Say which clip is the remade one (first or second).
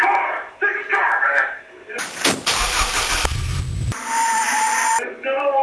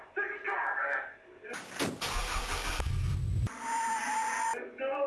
first